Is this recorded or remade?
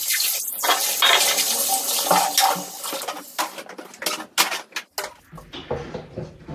recorded